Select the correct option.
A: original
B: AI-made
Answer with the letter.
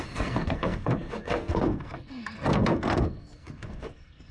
B